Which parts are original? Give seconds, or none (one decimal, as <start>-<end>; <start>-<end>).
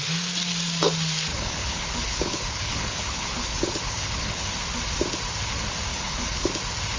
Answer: 0.0-1.3; 4.5-5.9; 6.5-7.0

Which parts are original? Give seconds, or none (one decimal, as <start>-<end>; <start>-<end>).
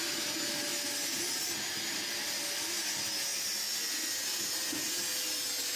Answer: 0.0-3.3; 4.8-5.8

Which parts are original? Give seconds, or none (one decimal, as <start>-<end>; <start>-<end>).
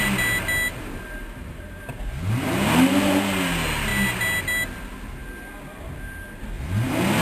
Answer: 0.0-0.7; 1.8-7.2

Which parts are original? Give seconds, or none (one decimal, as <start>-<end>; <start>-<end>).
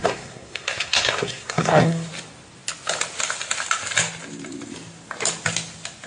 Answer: 2.1-6.1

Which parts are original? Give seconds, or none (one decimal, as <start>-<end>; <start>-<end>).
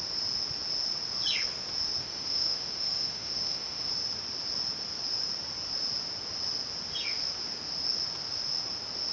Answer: 0.0-2.0; 3.9-9.1